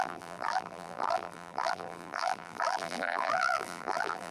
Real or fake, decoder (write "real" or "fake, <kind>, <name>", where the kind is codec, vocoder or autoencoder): fake, vocoder, BigVGAN v2